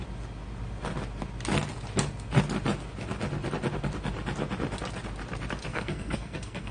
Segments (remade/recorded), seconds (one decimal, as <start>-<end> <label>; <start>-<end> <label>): 0.0-5.7 recorded; 5.7-6.7 remade